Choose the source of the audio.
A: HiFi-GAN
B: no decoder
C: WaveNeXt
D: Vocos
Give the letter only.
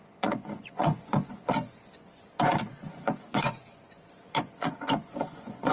D